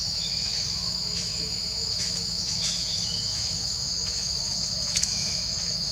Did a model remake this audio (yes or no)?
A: yes